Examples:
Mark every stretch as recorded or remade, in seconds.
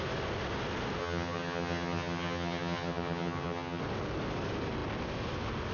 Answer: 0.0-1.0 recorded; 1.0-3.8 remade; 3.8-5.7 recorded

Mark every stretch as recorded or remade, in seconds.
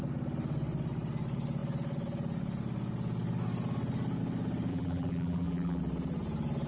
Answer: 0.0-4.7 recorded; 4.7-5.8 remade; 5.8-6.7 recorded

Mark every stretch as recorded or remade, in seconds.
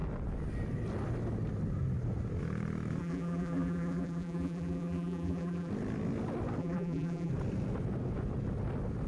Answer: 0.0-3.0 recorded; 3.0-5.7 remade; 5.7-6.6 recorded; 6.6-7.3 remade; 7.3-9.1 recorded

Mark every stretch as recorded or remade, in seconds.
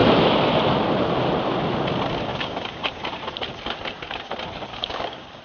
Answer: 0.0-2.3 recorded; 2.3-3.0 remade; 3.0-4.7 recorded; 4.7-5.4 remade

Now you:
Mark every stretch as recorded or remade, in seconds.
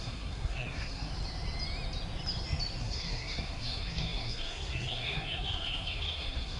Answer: 0.0-1.1 remade; 1.1-2.8 recorded; 2.8-6.6 remade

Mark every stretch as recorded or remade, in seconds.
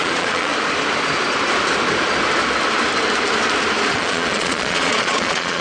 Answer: 0.0-0.5 remade; 0.5-3.9 recorded; 3.9-5.6 remade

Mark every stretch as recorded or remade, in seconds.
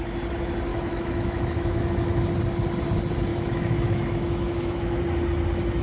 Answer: 0.0-0.7 recorded; 0.7-2.2 remade; 2.2-3.3 recorded; 3.3-5.0 remade; 5.0-5.8 recorded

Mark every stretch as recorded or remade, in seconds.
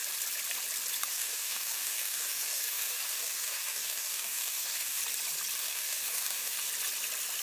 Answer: 0.0-1.1 recorded; 1.1-5.0 remade; 5.0-5.6 recorded; 5.6-6.7 remade; 6.7-7.4 recorded